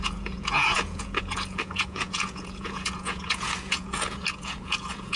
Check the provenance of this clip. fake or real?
fake